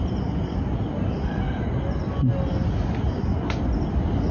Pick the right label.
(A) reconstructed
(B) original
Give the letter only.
B